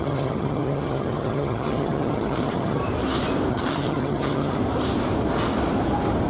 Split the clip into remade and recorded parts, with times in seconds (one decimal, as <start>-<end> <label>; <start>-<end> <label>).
0.0-2.8 remade; 2.8-3.5 recorded; 3.5-4.6 remade; 4.6-6.3 recorded